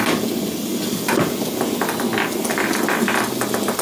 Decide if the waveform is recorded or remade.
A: recorded